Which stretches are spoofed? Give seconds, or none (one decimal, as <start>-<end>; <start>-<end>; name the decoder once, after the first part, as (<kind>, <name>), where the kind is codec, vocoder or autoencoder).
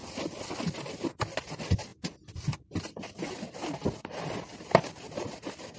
none